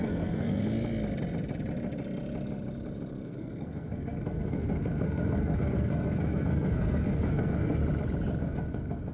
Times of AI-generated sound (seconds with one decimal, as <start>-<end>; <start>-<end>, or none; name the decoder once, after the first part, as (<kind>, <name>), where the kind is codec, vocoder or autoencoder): 0.0-0.6 (codec, SNAC); 3.2-7.8; 8.4-9.1